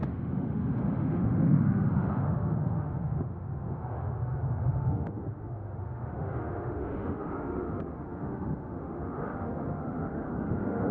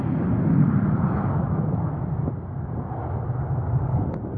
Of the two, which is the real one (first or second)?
second